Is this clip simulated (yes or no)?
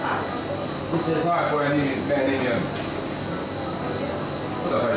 no